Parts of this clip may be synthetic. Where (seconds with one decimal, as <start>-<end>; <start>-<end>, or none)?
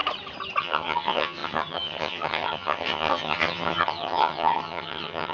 0.6-5.3